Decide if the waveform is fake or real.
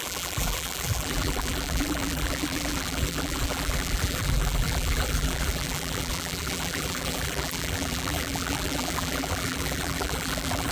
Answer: fake